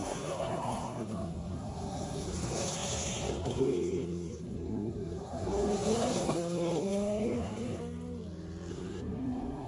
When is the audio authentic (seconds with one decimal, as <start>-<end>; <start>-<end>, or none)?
7.8-8.7